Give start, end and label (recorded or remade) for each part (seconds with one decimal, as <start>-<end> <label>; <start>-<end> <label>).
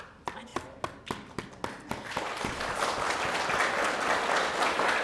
0.0-5.0 recorded